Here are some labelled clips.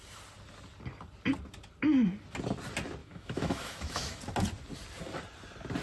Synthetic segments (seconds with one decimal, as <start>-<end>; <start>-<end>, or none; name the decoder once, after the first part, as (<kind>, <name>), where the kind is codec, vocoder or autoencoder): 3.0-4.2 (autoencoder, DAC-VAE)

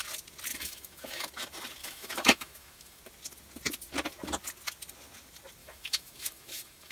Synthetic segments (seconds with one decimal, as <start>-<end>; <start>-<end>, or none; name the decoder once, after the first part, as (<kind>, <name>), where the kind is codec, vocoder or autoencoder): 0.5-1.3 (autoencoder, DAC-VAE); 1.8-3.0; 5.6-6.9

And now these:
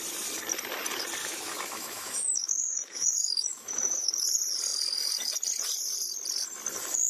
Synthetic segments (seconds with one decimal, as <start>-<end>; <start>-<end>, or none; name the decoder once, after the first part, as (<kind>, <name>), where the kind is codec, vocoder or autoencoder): 1.2-4.1 (autoencoder, DAC-VAE)

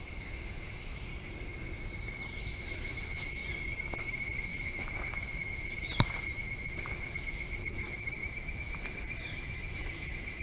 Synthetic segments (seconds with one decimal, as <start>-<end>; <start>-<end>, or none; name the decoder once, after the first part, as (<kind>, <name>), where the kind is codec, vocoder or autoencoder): 0.0-1.1 (autoencoder, DAC-VAE); 2.4-3.4; 4.0-10.4

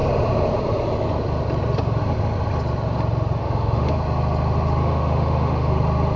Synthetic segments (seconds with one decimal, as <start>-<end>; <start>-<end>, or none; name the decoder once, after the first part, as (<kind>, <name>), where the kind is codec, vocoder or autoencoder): 3.4-3.9 (autoencoder, DAC-VAE); 4.8-5.7

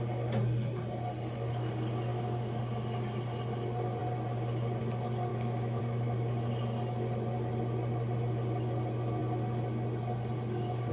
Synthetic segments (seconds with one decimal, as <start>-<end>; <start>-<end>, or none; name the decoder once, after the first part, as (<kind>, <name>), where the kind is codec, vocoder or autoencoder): 2.1-2.6 (autoencoder, DAC-VAE); 5.3-5.8